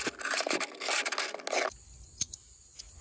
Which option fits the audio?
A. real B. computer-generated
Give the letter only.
A